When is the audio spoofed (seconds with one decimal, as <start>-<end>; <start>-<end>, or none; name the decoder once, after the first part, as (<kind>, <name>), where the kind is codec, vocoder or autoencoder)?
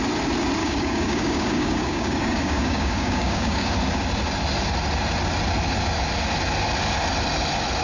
0.6-3.7 (codec, DAC)